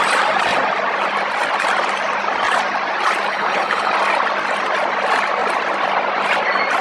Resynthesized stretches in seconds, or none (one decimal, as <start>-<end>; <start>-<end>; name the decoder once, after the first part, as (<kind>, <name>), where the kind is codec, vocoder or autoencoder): 3.3-3.9 (codec, HILCodec)